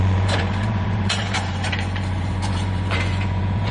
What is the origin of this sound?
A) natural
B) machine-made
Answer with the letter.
B